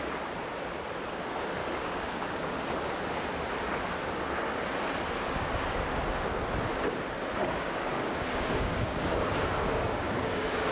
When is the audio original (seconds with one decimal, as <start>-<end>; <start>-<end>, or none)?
0.0-1.6; 2.5-7.4